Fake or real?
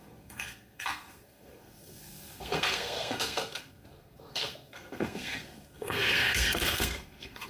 fake